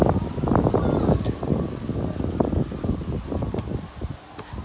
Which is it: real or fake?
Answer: real